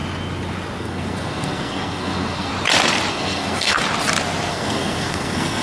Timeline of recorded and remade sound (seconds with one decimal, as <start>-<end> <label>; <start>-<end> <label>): 0.0-0.8 recorded; 0.8-2.5 remade; 2.5-3.1 recorded; 3.1-3.8 remade; 3.8-4.5 recorded; 4.5-5.6 remade